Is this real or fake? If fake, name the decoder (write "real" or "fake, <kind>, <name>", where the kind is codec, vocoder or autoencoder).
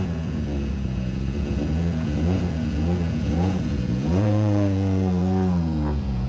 fake, vocoder, Vocos